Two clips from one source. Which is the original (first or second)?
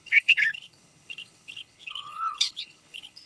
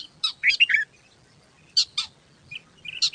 second